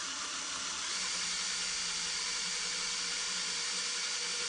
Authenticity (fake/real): fake